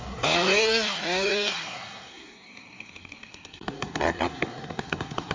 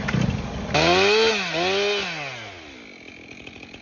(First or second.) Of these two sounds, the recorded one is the second